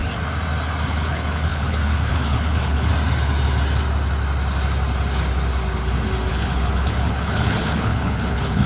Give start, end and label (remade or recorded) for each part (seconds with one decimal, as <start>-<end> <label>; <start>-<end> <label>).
0.0-0.9 recorded; 0.9-2.9 remade; 2.9-6.3 recorded; 6.3-8.7 remade